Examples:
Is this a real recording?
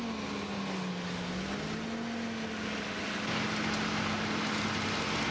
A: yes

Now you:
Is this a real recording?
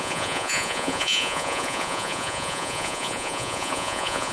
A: no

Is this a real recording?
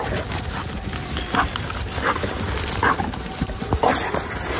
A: yes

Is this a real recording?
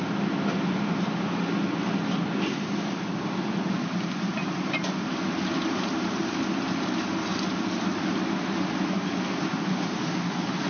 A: yes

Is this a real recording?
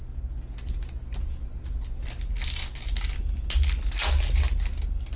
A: yes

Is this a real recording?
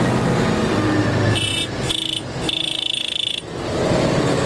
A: yes